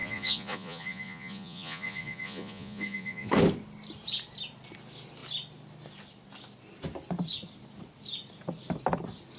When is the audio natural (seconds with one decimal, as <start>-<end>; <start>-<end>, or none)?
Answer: 3.3-9.4